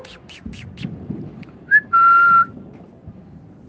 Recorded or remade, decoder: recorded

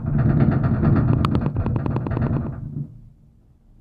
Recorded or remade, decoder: recorded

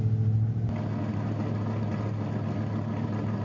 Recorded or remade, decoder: recorded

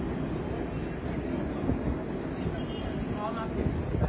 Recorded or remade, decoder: recorded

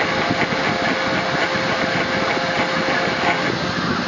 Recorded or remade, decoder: recorded